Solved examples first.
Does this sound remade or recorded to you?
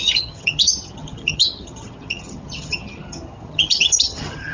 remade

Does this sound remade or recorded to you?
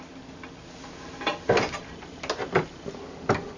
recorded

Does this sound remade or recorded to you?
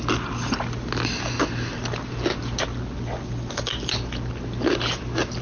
recorded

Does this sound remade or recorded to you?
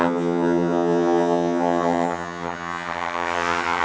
remade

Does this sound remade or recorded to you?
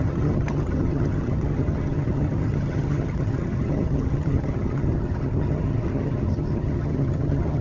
remade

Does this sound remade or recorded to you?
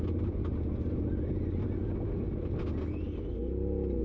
recorded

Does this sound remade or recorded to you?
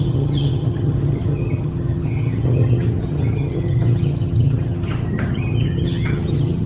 remade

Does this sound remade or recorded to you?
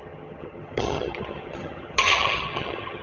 remade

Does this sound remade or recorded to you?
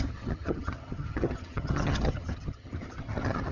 remade